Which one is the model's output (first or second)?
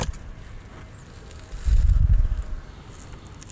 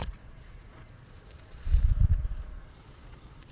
second